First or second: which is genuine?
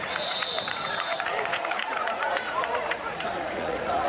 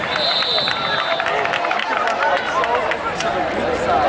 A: second